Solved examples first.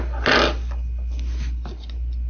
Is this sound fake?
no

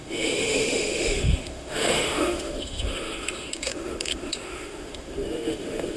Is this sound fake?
yes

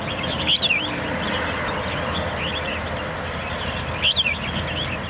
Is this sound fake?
no